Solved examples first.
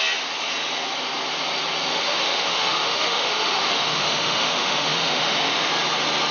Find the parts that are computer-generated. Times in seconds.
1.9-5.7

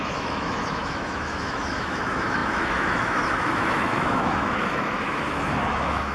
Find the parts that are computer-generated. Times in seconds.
0.0-6.1

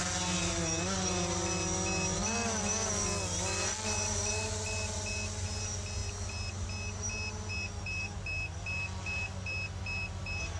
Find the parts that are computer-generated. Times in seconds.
none

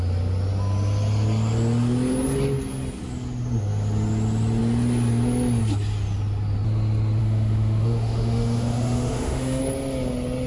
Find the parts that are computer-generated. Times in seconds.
7.2-9.6